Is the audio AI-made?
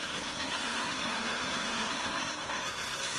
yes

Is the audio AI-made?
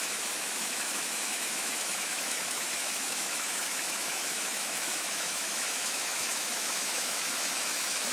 yes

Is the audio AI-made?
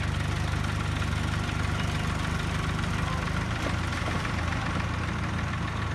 no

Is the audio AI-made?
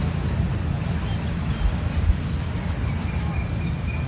no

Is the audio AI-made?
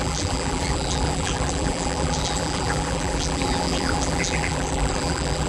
yes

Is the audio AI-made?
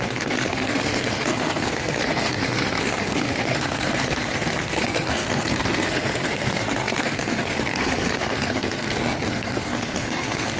yes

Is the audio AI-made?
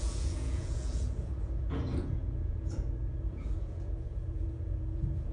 yes